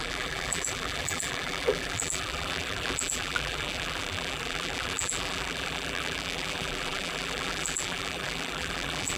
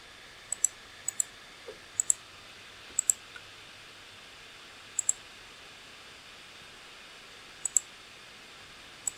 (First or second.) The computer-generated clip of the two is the first